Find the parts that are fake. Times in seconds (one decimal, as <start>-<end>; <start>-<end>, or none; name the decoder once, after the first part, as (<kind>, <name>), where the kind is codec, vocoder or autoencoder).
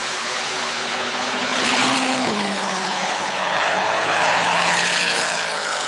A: 0.0-5.9 (codec, HILCodec)